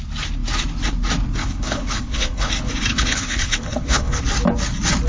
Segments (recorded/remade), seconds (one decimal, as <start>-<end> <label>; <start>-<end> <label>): 0.0-1.4 recorded; 1.4-2.5 remade; 2.5-2.9 recorded; 2.9-4.2 remade; 4.2-5.1 recorded